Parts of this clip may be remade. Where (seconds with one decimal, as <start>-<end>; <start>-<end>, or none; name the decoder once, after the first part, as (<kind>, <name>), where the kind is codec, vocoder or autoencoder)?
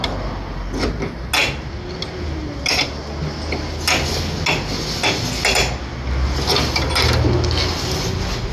none